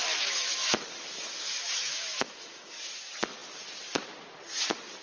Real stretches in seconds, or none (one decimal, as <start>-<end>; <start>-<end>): 3.0-5.0